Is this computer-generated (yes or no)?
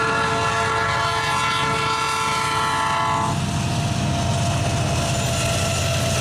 no